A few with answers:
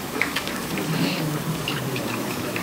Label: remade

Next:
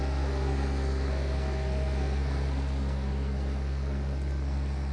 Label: remade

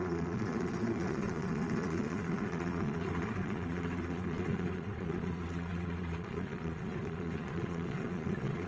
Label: remade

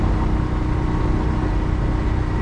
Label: recorded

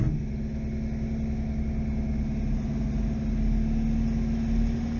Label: recorded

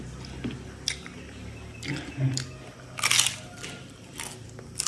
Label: recorded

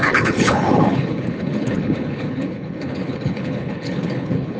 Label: remade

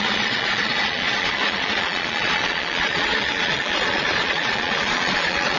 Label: remade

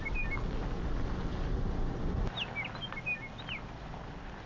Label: recorded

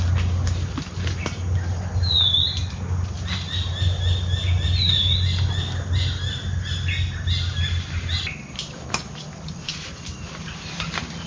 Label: recorded